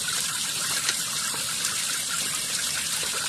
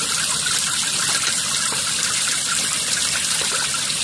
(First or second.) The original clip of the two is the second